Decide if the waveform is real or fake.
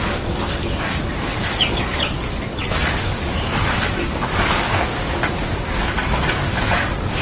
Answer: fake